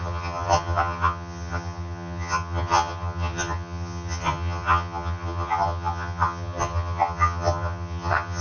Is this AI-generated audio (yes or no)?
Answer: yes